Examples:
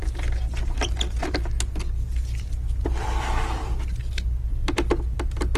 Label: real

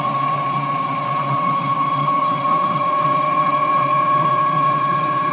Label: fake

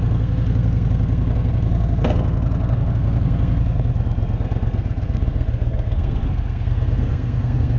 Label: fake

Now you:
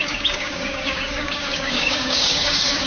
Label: fake